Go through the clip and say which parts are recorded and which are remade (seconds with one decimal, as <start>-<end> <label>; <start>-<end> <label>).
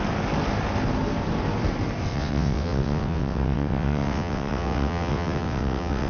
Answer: 0.0-2.1 recorded; 2.1-6.1 remade